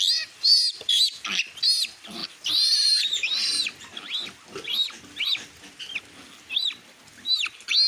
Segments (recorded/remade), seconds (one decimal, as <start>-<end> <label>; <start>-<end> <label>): 0.0-0.5 recorded; 0.5-1.2 remade; 1.2-2.2 recorded; 2.2-6.0 remade; 6.0-7.9 recorded